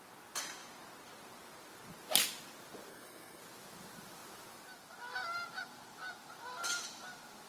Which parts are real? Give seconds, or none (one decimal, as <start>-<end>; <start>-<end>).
0.0-2.9; 3.4-7.5